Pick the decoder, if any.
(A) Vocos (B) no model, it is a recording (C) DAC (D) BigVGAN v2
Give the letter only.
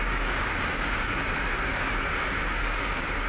C